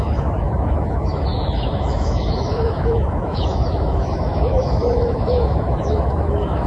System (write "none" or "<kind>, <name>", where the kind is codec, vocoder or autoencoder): autoencoder, DAC-VAE